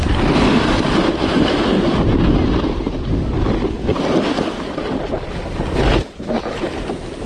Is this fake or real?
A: real